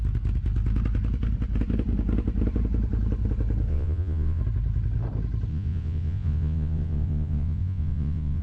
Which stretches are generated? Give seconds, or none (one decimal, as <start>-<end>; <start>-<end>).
3.7-4.4; 5.5-8.4